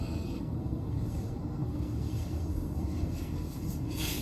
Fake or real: fake